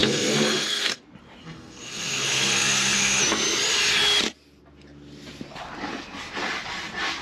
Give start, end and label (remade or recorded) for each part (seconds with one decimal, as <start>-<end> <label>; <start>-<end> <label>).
0.0-1.0 remade; 1.0-1.4 recorded; 1.4-3.2 remade; 3.2-7.2 recorded